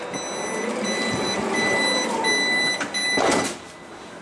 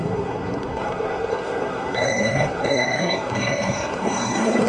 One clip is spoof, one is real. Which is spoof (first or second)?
second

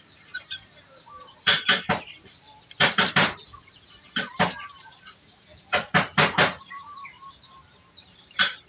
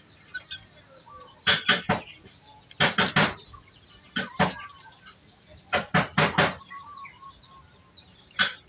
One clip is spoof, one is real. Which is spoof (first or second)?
first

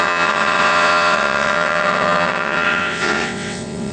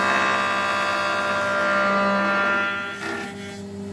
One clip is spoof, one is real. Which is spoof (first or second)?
first